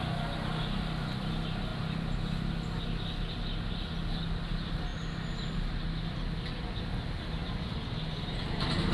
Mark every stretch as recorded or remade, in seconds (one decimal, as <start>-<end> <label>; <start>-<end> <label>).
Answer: 0.0-8.9 recorded